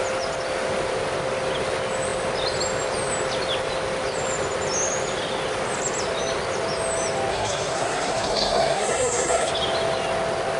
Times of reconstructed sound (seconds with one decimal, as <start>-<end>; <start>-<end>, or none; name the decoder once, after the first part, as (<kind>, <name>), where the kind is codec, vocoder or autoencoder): 7.3-9.5 (codec, SNAC)